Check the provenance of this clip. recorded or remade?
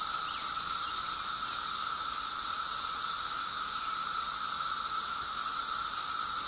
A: recorded